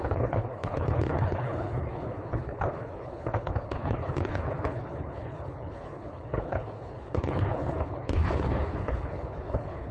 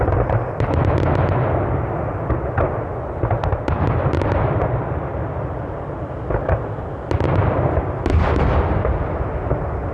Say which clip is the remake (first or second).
first